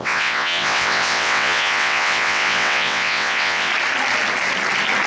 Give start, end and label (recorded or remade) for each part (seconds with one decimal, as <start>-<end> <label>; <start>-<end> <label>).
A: 0.0-3.7 remade; 3.7-5.1 recorded